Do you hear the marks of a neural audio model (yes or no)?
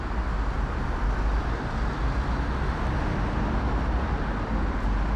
no